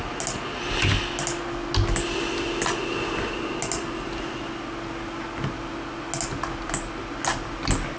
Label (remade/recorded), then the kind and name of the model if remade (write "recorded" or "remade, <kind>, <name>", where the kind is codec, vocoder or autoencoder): recorded